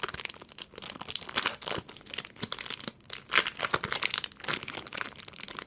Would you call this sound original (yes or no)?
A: yes